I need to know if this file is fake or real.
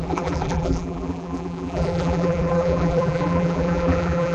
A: fake